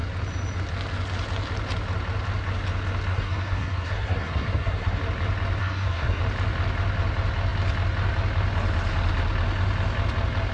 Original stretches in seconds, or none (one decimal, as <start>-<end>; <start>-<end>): 0.0-3.1; 5.0-5.6; 6.2-10.5